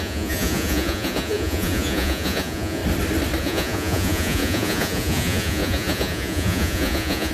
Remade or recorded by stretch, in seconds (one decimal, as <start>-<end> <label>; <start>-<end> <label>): 0.0-2.8 remade; 2.8-3.4 recorded; 3.4-7.3 remade